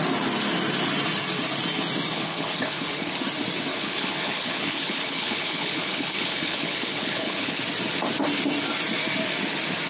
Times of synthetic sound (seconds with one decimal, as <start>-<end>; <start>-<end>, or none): 2.1-3.1; 3.7-7.6